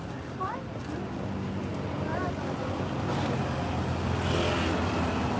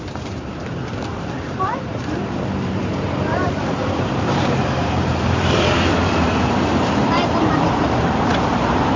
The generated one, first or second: second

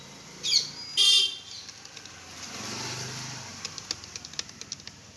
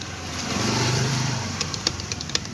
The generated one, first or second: second